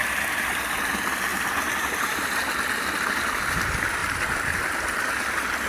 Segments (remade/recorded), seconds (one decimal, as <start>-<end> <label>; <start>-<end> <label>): 0.0-0.7 remade; 0.7-1.3 recorded; 1.3-3.4 remade; 3.4-5.7 recorded